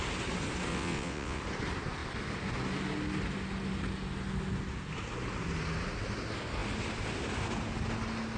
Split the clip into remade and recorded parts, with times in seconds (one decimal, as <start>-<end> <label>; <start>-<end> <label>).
0.0-0.7 recorded; 0.7-1.4 remade; 1.4-8.4 recorded